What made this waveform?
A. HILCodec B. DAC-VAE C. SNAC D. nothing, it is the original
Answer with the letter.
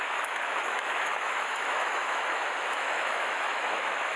B